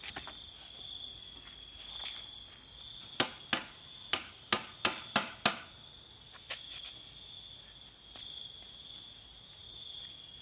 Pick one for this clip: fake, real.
real